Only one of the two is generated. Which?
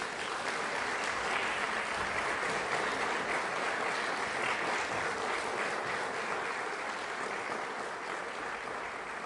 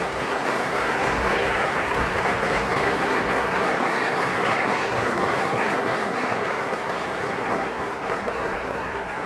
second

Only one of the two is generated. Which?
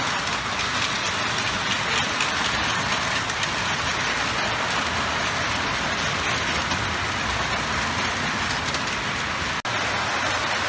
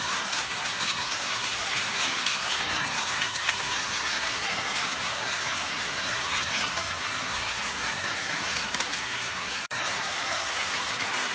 second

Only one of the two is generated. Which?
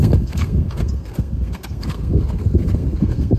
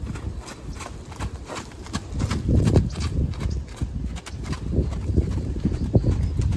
first